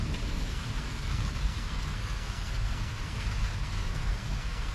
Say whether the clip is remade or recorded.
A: remade